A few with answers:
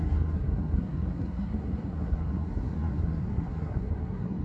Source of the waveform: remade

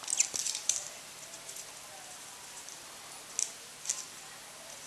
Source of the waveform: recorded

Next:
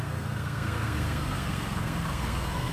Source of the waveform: remade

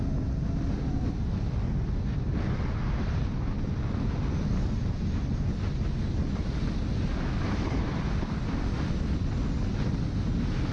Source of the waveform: recorded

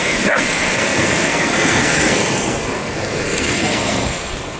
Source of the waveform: remade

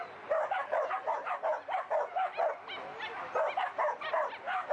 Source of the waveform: recorded